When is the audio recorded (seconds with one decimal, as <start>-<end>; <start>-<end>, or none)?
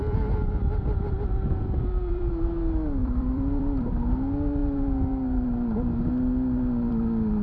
2.3-3.0; 4.1-7.4